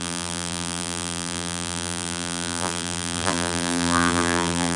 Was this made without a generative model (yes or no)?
no